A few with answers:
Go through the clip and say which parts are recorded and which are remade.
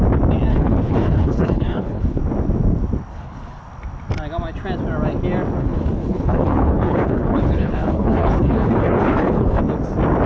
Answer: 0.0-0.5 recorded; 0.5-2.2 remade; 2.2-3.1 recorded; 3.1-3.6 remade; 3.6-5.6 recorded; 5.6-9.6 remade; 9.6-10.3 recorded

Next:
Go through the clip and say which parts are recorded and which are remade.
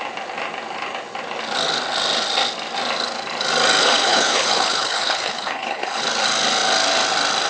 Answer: 0.0-3.8 recorded; 3.8-6.0 remade; 6.0-7.5 recorded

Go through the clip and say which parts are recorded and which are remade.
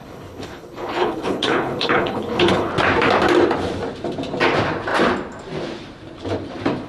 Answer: 0.0-2.7 remade; 2.7-6.9 recorded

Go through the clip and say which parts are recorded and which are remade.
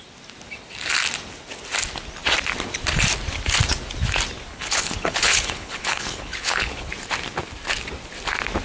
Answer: 0.0-4.5 recorded; 4.5-6.9 remade; 6.9-8.6 recorded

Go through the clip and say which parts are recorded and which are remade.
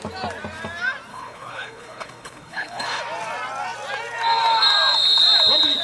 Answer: 0.0-1.1 recorded; 1.1-3.0 remade; 3.0-5.8 recorded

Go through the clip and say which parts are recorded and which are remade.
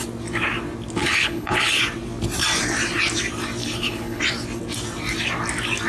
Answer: 0.0-1.0 recorded; 1.0-1.8 remade; 1.8-3.6 recorded; 3.6-4.2 remade; 4.2-5.9 recorded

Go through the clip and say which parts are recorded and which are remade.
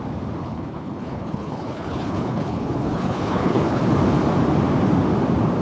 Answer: 0.0-0.4 recorded; 0.4-3.8 remade; 3.8-5.6 recorded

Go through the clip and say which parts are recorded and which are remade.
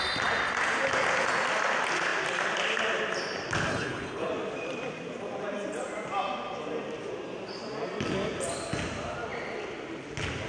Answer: 0.0-3.7 recorded; 3.7-4.3 remade; 4.3-10.5 recorded